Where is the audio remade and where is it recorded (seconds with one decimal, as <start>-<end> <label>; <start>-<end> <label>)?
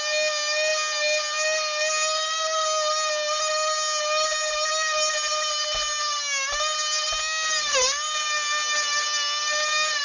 0.0-10.0 recorded